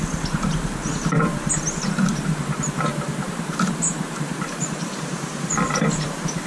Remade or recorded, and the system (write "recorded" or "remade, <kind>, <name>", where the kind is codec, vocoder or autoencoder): remade, vocoder, BigVGAN v2